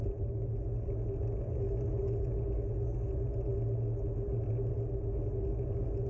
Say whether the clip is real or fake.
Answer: real